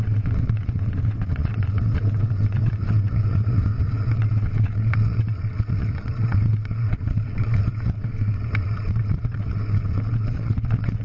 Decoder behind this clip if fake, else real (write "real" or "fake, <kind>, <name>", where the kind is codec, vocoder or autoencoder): fake, vocoder, WaveNeXt